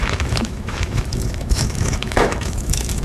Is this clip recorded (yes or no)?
no